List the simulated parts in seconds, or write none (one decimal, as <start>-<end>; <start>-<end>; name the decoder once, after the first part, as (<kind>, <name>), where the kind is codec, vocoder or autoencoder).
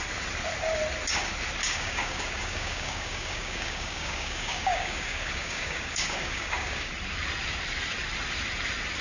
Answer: 1.6-6.9 (codec, DAC)